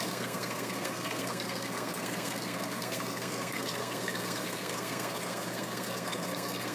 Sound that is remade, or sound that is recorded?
remade